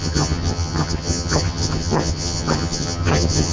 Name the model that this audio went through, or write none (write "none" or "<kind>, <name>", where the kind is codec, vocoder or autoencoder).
vocoder, HiFi-GAN